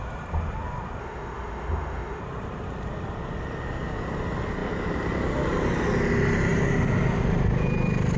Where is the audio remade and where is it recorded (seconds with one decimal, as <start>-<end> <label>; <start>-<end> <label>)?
0.0-1.0 recorded; 1.0-2.2 remade; 2.2-8.2 recorded